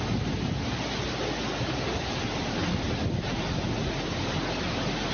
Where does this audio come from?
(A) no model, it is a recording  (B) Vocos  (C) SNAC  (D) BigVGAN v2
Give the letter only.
A